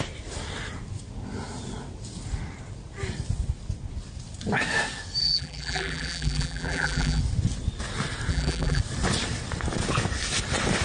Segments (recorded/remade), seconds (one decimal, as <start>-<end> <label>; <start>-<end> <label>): 0.0-5.2 recorded; 5.2-7.2 remade; 7.2-8.3 recorded; 8.3-8.8 remade; 8.8-10.8 recorded